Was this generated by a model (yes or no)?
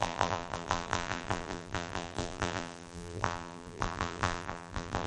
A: yes